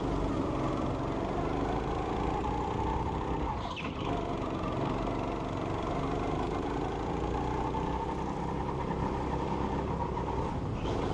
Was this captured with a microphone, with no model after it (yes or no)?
yes